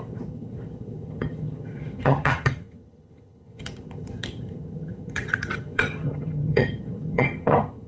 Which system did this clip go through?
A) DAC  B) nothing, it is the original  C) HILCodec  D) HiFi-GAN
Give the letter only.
D